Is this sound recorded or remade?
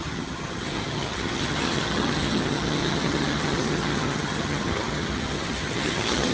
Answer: remade